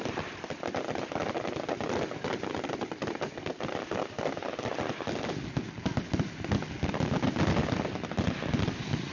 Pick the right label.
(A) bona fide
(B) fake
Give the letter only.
A